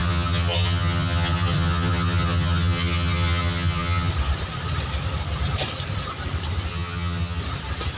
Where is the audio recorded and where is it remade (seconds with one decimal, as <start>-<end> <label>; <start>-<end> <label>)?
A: 0.0-4.1 remade; 4.1-6.7 recorded; 6.7-7.4 remade; 7.4-8.0 recorded